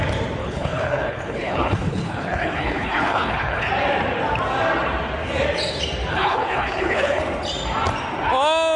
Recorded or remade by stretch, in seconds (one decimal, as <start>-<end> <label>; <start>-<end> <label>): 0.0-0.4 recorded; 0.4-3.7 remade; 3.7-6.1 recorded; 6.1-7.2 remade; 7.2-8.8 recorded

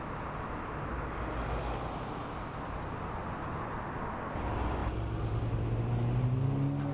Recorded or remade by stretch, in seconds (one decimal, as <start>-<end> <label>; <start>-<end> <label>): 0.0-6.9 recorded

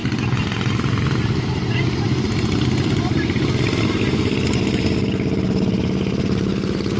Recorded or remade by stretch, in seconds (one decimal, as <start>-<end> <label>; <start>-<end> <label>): 0.0-7.0 recorded

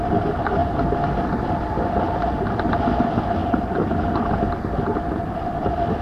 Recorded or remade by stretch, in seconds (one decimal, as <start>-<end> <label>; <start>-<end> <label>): 0.0-0.6 recorded; 0.6-1.6 remade; 1.6-3.4 recorded; 3.4-4.3 remade; 4.3-6.0 recorded